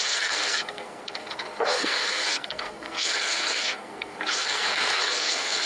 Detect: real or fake fake